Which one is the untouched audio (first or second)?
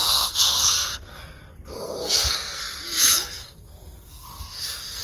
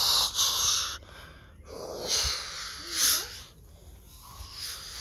second